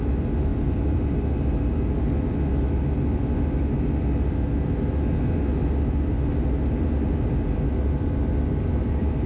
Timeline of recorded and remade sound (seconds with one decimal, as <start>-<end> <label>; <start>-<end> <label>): 0.0-0.5 recorded; 0.5-1.0 remade; 1.0-9.3 recorded